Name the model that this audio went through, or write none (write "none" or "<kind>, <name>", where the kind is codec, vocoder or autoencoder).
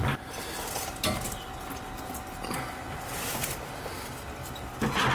none